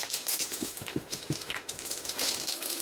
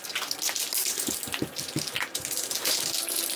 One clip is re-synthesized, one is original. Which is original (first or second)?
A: second